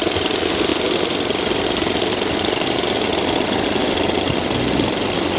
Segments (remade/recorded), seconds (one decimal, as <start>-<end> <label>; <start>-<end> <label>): 0.0-0.7 recorded; 0.7-3.9 remade; 3.9-5.4 recorded